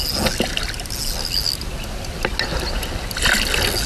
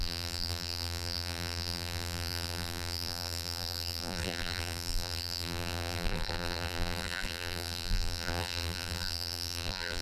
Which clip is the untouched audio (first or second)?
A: first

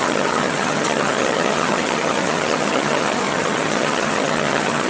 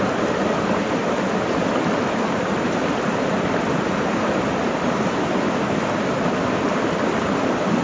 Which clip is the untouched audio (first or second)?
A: second